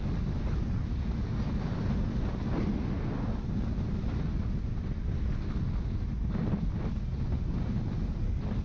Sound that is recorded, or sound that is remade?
recorded